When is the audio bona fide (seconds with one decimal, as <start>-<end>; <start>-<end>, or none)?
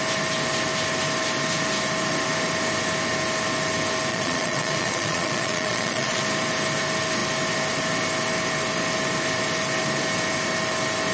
0.0-4.1; 6.2-11.1